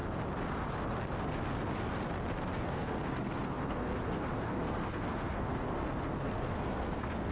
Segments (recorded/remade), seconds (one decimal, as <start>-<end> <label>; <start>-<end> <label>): 0.0-2.6 recorded; 2.6-7.3 remade